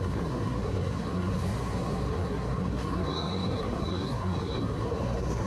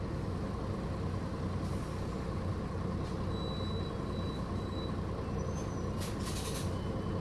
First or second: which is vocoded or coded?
first